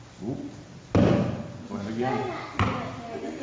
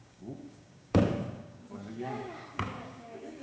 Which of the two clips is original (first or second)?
first